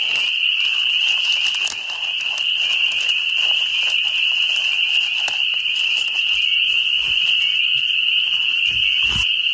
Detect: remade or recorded recorded